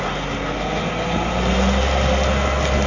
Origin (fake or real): real